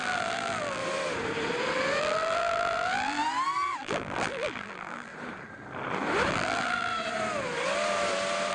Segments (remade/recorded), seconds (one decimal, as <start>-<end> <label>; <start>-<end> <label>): 0.0-0.8 remade; 0.8-2.0 recorded; 2.0-3.2 remade; 3.2-3.8 recorded; 3.8-5.1 remade; 5.1-6.3 recorded; 6.3-6.9 remade; 6.9-8.5 recorded